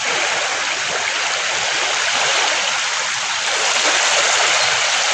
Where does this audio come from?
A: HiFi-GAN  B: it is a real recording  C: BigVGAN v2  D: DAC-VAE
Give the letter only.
B